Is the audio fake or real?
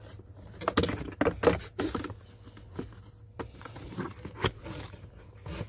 real